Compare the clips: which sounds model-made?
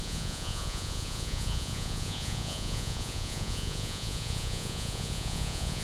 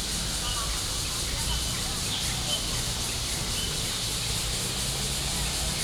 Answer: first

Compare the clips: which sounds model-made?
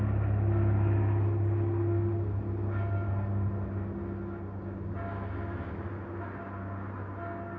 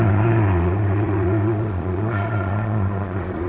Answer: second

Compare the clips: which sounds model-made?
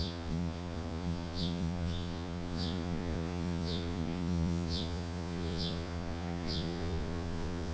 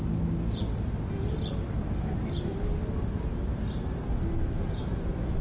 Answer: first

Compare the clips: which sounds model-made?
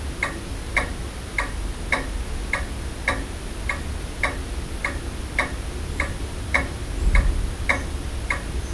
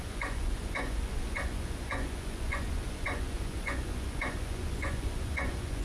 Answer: second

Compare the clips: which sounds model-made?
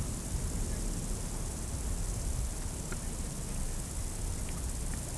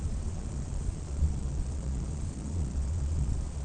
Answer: second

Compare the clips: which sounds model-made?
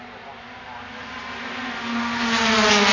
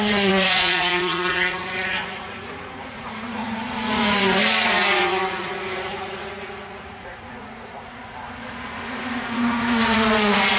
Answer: second